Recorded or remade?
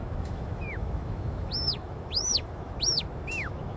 remade